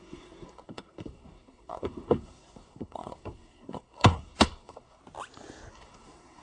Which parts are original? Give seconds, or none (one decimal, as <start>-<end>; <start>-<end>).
5.0-5.7